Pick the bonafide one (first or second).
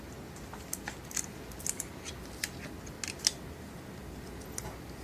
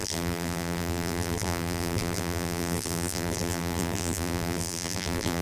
first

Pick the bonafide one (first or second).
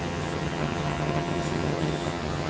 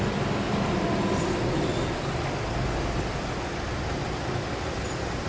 second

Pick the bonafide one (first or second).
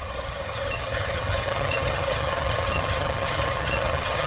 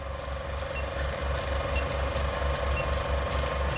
second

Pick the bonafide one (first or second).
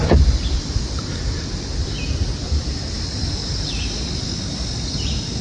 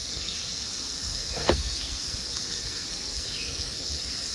first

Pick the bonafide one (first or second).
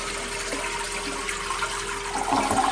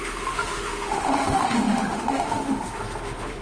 first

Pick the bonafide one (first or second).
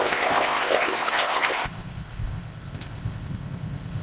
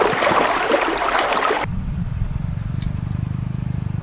second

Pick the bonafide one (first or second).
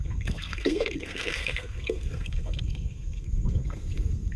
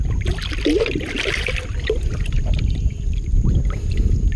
second